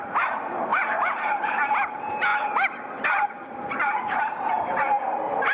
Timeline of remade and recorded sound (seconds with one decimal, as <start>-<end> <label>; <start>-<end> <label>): 0.0-0.7 recorded; 0.7-1.6 remade; 1.6-2.3 recorded; 2.3-4.2 remade; 4.2-5.5 recorded